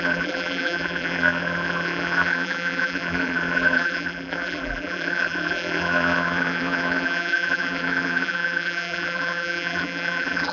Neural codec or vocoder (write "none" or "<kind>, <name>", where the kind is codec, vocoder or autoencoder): vocoder, BigVGAN v2